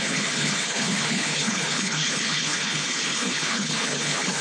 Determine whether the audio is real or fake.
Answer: fake